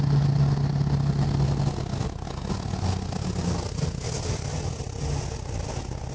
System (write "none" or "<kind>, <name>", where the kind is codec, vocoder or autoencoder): none